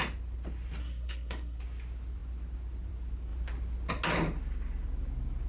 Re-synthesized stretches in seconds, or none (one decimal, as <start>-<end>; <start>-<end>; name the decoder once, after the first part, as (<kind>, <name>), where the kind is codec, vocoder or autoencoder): 0.8-1.6 (codec, SNAC)